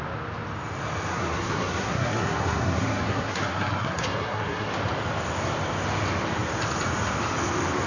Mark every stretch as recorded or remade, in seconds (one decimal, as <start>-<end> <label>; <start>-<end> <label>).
0.0-1.1 recorded; 1.1-4.7 remade; 4.7-7.9 recorded